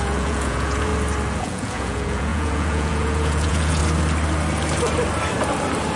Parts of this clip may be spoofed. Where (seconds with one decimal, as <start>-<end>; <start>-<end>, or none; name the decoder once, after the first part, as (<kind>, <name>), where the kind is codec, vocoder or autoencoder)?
0.0-0.9 (vocoder, Vocos); 1.4-3.8

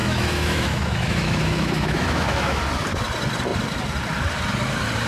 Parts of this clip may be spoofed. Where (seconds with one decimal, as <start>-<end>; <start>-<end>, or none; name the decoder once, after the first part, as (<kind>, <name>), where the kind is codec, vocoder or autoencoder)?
0.0-2.6 (autoencoder, DAC-VAE)

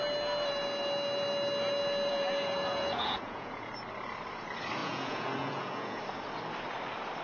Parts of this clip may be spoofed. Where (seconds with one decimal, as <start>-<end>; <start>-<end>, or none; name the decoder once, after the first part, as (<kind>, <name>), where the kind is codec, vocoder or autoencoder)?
2.1-3.7 (vocoder, Vocos); 4.8-6.0

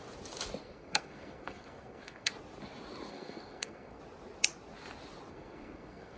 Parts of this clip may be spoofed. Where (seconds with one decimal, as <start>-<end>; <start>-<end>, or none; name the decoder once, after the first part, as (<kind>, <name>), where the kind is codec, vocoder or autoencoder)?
0.6-2.3 (codec, SNAC); 3.1-4.0; 5.3-6.2